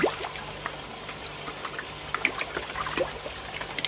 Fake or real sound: real